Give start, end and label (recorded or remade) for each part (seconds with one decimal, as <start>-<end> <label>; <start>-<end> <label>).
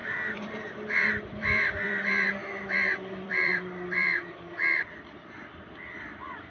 0.0-6.5 remade